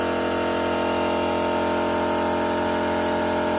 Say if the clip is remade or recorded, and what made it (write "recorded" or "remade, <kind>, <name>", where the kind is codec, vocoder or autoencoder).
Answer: recorded